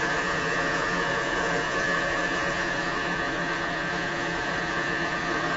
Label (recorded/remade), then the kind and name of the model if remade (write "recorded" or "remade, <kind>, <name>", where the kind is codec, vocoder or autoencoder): remade, vocoder, Vocos